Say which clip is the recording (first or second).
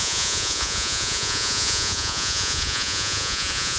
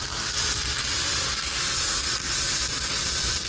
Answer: second